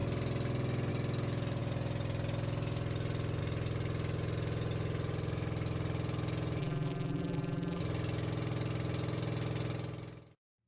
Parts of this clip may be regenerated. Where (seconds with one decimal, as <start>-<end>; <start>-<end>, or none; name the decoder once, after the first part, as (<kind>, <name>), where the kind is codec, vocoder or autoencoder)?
6.6-7.8 (vocoder, BigVGAN v2)

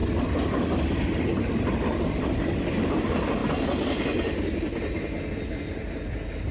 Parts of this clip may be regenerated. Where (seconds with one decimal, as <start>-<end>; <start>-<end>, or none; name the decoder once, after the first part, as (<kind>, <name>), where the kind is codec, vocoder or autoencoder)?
none